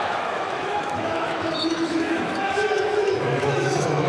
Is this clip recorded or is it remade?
remade